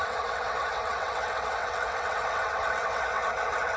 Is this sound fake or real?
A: fake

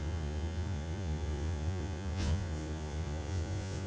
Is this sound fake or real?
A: fake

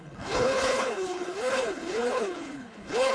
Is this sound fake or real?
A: fake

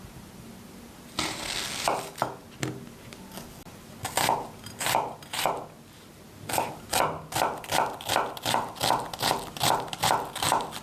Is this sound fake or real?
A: real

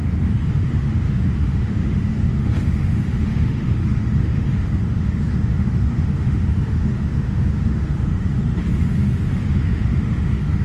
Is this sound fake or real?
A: fake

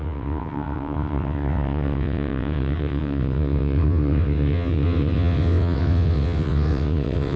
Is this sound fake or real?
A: fake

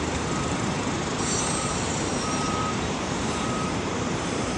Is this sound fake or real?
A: fake